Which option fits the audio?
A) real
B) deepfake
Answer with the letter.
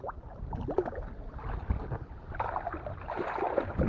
A